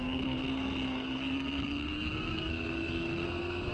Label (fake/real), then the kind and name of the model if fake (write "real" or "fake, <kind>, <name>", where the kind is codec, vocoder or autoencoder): fake, codec, SNAC